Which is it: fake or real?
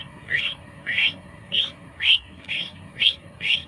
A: fake